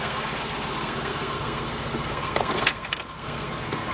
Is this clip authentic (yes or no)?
no